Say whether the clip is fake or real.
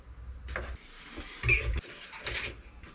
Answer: real